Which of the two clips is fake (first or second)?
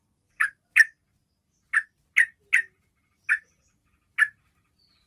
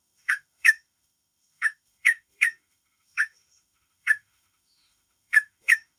second